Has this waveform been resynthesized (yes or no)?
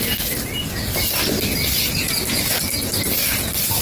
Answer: no